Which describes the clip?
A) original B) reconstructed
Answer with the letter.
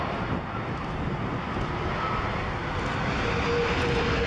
A